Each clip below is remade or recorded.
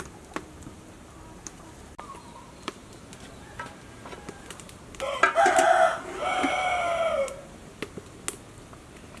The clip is recorded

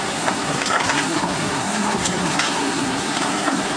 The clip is remade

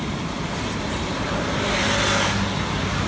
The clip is recorded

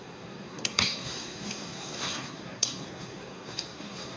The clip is remade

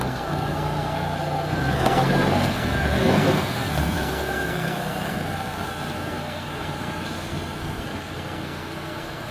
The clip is remade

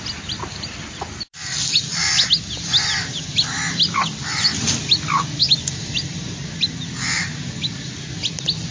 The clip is recorded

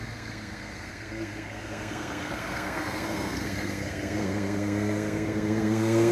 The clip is remade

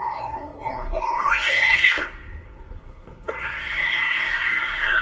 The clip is remade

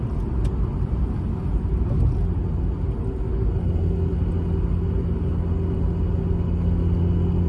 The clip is recorded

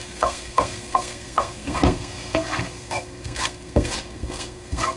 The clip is remade